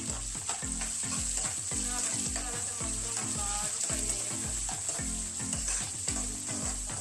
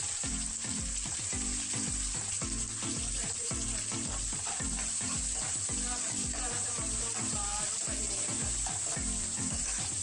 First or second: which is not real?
second